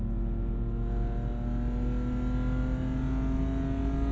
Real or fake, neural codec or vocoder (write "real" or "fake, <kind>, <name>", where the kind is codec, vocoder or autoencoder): real